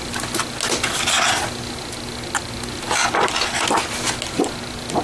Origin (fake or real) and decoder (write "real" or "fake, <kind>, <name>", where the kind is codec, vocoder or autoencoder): real